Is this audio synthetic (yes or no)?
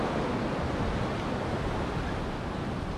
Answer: no